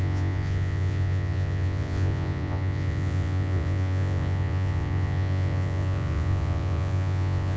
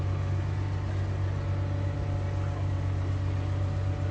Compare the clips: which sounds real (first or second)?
second